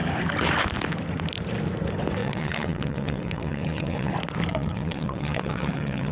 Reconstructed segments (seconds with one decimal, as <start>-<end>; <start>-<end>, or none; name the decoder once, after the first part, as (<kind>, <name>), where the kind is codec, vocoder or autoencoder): 2.2-4.1 (vocoder, WaveNeXt); 4.5-6.1